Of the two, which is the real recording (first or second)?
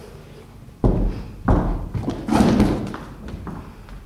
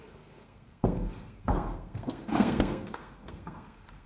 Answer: first